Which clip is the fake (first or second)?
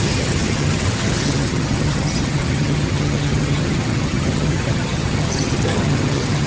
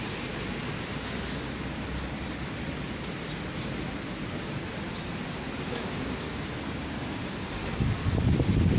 first